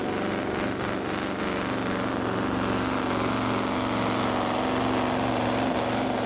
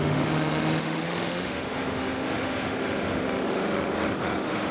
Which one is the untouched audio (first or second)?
first